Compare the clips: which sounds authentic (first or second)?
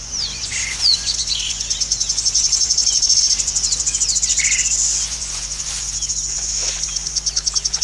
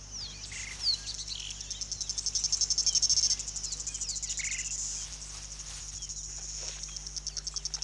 second